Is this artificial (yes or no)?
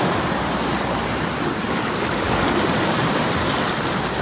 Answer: no